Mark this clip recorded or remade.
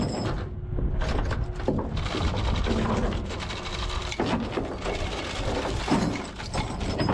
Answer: recorded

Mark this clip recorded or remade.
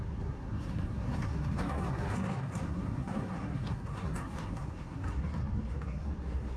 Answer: remade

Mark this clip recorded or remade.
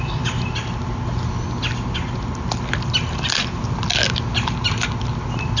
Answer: recorded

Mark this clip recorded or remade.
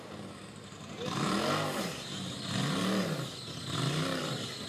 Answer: recorded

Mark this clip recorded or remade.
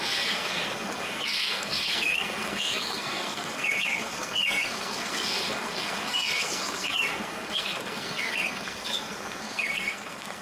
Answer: remade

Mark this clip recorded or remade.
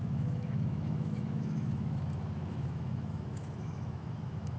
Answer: remade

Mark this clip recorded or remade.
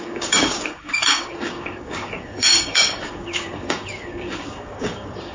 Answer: remade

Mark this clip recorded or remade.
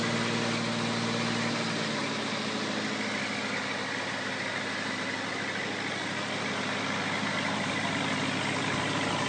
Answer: recorded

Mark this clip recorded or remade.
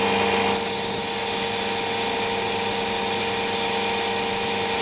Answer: recorded